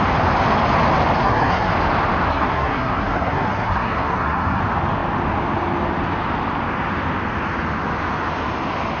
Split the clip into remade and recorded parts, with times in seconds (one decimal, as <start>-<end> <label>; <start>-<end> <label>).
0.0-1.2 recorded; 1.2-1.7 remade; 1.7-2.3 recorded; 2.3-4.6 remade; 4.6-9.0 recorded